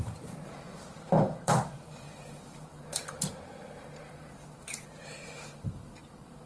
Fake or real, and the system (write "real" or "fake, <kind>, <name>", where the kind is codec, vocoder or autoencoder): fake, vocoder, BigVGAN v2